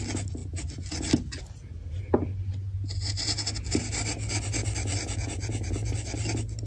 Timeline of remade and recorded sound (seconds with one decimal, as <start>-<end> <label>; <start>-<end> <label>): 0.0-6.7 recorded